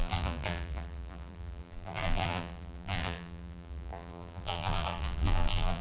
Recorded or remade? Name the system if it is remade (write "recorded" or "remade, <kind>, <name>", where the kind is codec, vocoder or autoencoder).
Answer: remade, vocoder, BigVGAN v2